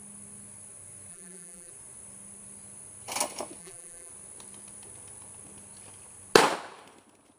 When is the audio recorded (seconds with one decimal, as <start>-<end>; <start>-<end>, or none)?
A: 0.0-1.1; 1.7-3.6; 4.1-7.4